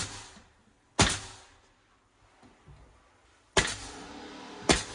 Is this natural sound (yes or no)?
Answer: yes